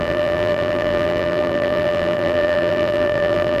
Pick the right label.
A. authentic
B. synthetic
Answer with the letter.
B